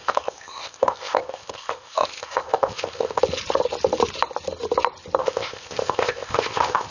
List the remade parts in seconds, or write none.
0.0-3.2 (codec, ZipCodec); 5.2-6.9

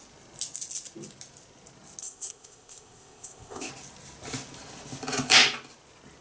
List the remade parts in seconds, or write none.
2.0-3.7 (codec, ZipCodec)

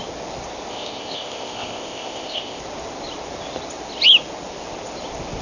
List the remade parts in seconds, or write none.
0.7-2.6 (codec, ZipCodec)

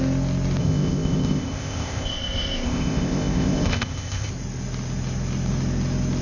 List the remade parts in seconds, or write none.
0.6-4.3 (codec, ZipCodec)